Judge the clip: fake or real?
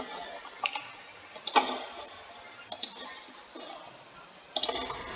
real